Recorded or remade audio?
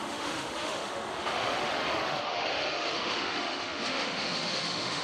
remade